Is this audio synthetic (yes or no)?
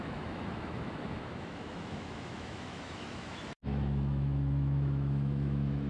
yes